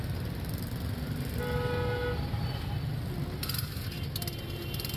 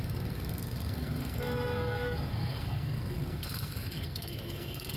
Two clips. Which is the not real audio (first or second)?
second